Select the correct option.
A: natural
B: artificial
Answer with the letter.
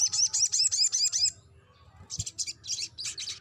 A